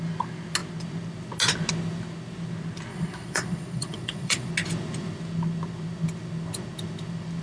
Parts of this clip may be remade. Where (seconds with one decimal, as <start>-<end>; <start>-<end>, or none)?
2.9-4.5